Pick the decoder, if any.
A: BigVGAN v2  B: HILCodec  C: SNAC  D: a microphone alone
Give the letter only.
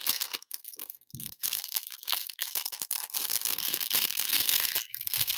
C